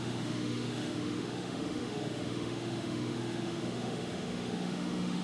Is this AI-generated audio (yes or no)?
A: yes